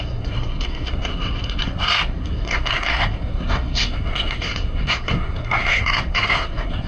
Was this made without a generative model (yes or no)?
no